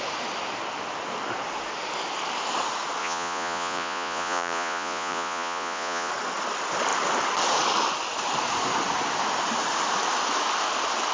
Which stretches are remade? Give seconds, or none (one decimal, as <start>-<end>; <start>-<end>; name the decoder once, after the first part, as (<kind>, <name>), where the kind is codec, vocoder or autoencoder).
3.0-6.1 (vocoder, Vocos)